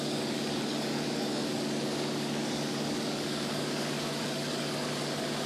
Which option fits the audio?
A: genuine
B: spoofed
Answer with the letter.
B